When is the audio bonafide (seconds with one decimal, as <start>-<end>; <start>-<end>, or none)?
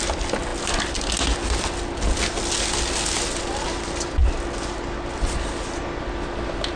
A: 0.0-6.8